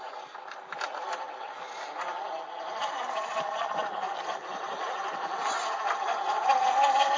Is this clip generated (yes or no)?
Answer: no